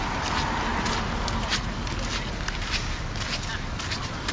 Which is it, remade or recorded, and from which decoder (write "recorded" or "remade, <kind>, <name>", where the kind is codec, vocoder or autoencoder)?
recorded